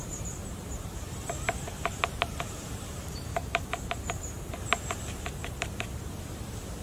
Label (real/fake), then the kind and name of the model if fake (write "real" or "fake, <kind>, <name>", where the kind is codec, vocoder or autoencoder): fake, vocoder, BigVGAN v2